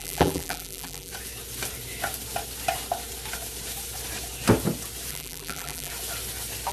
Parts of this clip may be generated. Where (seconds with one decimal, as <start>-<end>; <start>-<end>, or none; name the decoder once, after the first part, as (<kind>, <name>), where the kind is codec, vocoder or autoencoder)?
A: 0.0-1.1 (vocoder, BigVGAN v2); 5.1-5.9